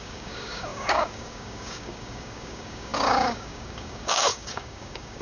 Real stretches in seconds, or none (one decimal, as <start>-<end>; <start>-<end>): none